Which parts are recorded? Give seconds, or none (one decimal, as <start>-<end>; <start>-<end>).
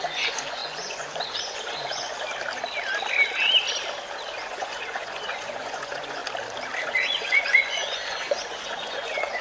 2.1-4.4; 6.2-6.8